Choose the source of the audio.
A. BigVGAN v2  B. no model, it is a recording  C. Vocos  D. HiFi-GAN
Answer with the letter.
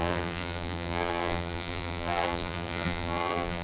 A